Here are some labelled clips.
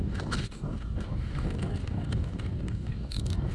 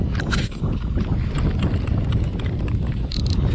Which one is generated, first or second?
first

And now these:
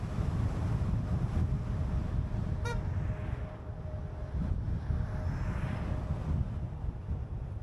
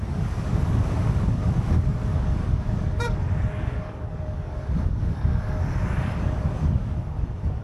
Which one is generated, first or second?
second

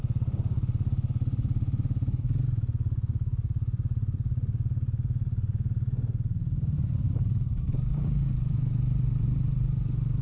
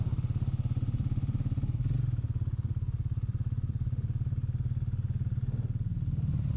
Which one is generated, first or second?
first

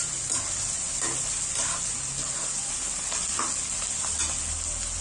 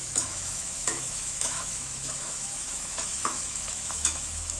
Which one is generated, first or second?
second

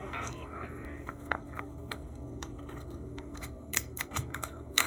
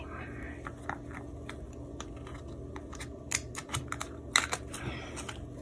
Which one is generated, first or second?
first